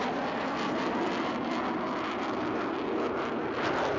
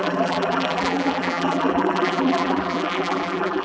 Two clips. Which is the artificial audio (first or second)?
second